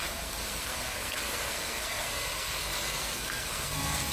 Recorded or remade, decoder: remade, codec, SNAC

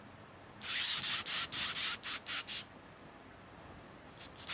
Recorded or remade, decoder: recorded